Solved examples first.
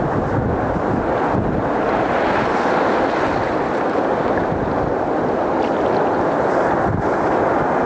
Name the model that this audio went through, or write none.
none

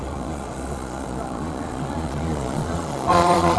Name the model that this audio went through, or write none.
vocoder, Vocos